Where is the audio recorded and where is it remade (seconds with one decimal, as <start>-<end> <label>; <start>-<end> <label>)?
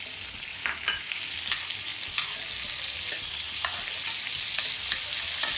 0.0-0.5 recorded; 0.5-1.1 remade; 1.1-5.6 recorded